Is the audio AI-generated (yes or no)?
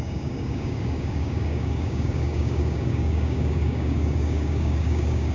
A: yes